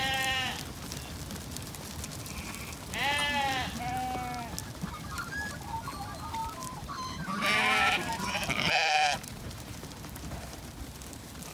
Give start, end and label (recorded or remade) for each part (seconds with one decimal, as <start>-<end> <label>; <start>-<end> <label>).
0.0-6.4 recorded; 6.4-10.6 remade; 10.6-11.5 recorded